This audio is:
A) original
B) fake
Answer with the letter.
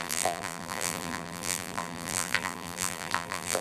B